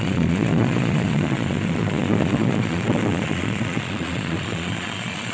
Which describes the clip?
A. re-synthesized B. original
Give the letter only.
A